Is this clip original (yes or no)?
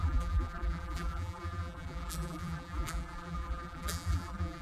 no